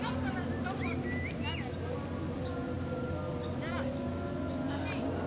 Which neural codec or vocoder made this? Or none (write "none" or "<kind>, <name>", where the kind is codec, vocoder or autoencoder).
none